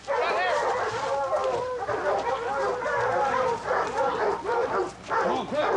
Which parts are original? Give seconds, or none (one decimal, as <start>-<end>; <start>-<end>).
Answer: 0.0-5.8